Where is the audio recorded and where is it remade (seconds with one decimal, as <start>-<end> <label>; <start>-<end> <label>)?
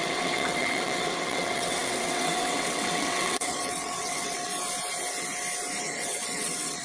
0.0-4.5 remade; 4.5-5.8 recorded; 5.8-6.8 remade